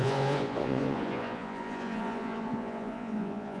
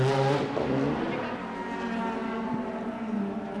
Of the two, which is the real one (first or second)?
second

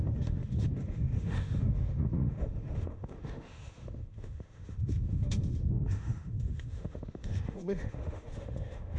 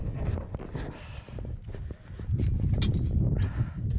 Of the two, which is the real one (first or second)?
second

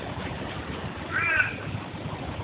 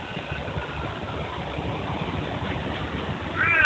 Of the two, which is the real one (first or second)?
second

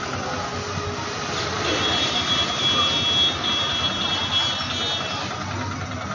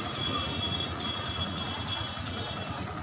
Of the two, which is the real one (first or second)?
first